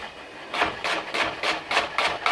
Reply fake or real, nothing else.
real